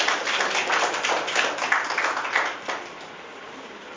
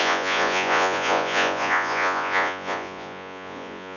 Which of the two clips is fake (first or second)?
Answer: second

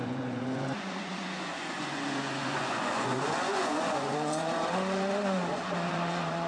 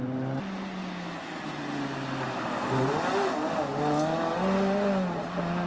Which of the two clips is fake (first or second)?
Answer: first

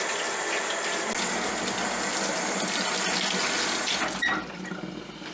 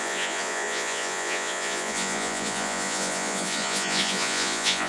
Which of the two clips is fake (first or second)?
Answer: second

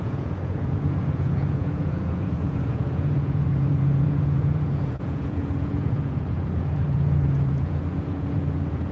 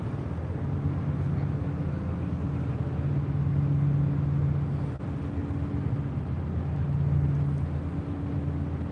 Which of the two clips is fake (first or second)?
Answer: first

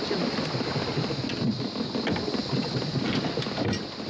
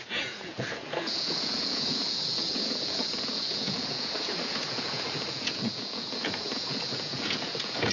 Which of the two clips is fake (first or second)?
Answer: second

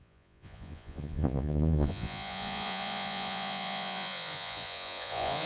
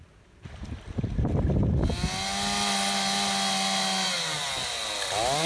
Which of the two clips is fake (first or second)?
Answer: first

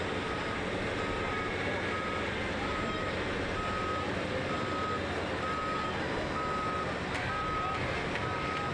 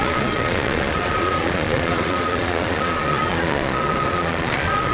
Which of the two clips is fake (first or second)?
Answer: second